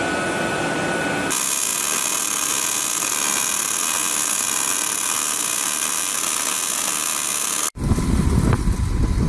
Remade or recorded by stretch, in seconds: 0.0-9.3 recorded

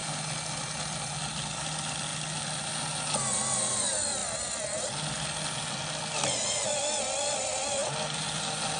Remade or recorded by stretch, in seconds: 0.0-8.8 recorded

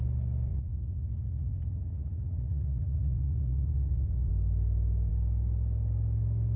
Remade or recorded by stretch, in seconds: 0.0-0.5 recorded; 0.5-4.3 remade; 4.3-6.6 recorded

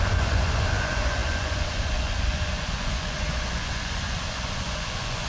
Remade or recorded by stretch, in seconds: 0.0-5.3 remade

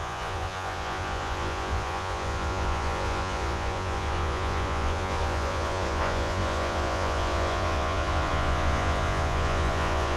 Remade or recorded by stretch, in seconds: 0.0-10.2 remade

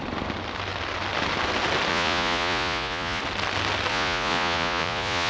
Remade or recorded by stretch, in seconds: 0.0-1.9 recorded; 1.9-3.2 remade; 3.2-3.9 recorded; 3.9-5.3 remade

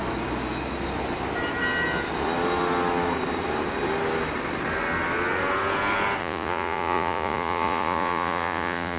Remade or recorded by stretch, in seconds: 0.0-6.2 recorded; 6.2-9.0 remade